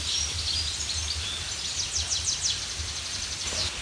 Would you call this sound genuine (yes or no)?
yes